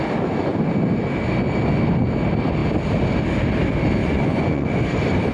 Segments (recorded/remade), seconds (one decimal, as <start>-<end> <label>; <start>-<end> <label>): 0.0-4.0 recorded; 4.0-4.8 remade; 4.8-5.3 recorded